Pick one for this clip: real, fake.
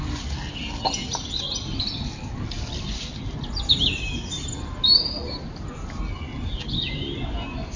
real